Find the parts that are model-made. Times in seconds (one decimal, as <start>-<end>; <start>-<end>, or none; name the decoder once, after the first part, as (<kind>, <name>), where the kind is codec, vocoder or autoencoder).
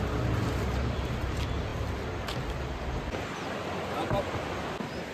none